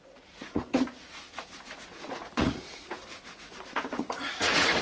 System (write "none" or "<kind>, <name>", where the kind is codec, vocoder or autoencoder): vocoder, Vocos